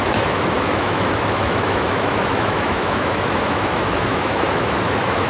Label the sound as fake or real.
fake